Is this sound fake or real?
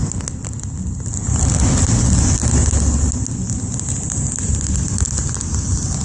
real